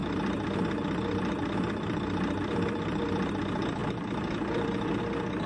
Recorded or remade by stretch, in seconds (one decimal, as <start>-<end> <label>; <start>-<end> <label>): 0.0-3.3 remade; 3.3-3.8 recorded; 3.8-5.0 remade; 5.0-5.5 recorded

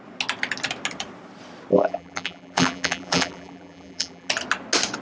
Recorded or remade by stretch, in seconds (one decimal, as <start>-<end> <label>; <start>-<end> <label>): 0.0-1.7 recorded; 1.7-4.3 remade; 4.3-5.0 recorded